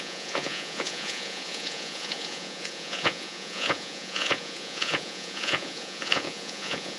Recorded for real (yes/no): no